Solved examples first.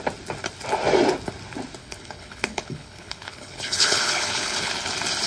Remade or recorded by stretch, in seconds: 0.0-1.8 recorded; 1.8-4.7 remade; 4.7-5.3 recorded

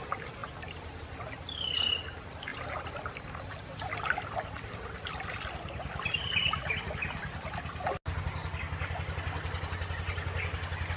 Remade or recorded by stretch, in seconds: 0.0-11.0 recorded

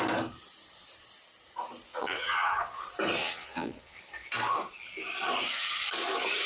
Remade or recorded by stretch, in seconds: 0.0-1.9 recorded; 1.9-2.8 remade; 2.8-3.2 recorded; 3.2-4.0 remade; 4.0-6.5 recorded

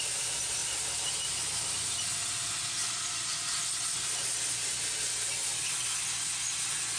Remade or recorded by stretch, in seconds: 0.0-7.0 recorded

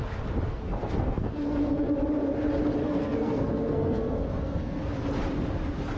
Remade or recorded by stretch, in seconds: 0.0-0.5 recorded; 0.5-1.9 remade; 1.9-2.8 recorded; 2.8-4.9 remade; 4.9-6.0 recorded

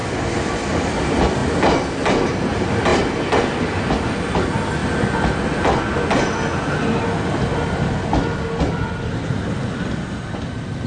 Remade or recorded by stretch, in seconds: 0.0-10.9 recorded

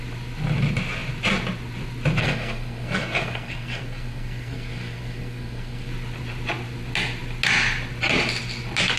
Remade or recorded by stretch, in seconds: 0.0-2.2 recorded; 2.2-5.9 remade; 5.9-9.0 recorded

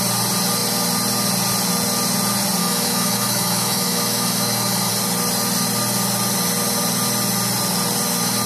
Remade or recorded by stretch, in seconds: 0.0-2.6 recorded; 2.6-4.9 remade; 4.9-8.5 recorded